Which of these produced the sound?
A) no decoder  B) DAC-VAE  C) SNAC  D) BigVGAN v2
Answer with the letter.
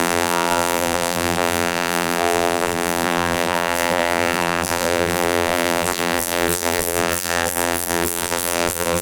D